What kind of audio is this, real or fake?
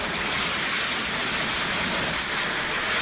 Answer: real